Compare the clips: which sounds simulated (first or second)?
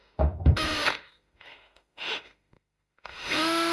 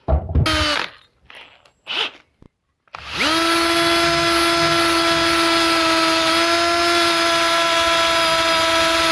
first